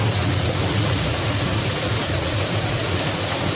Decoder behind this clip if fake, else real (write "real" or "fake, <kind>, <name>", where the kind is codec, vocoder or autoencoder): fake, vocoder, Vocos